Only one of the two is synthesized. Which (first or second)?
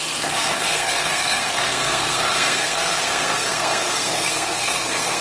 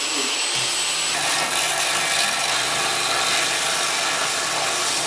first